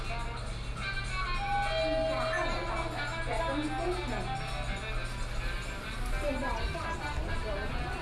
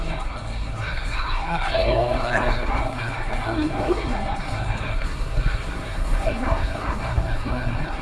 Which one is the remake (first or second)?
second